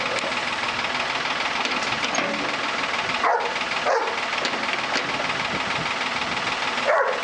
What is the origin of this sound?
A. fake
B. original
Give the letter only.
B